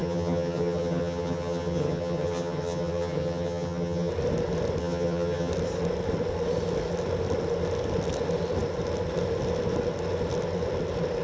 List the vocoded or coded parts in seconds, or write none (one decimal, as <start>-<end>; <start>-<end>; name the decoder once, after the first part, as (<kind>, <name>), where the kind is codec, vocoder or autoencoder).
0.0-4.1 (vocoder, HiFi-GAN); 4.8-5.5